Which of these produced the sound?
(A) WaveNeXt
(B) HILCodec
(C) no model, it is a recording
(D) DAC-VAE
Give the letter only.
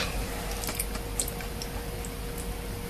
C